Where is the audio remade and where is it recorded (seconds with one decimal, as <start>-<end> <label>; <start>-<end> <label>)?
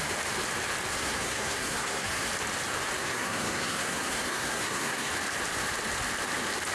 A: 0.0-0.9 recorded; 0.9-2.3 remade; 2.3-3.0 recorded; 3.0-5.1 remade; 5.1-6.7 recorded